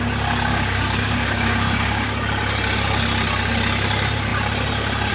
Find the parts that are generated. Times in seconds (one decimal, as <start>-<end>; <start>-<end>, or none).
0.5-2.1